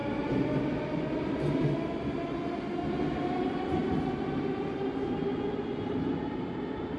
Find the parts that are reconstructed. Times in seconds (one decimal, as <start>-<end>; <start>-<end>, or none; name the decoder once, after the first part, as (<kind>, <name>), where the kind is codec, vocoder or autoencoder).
none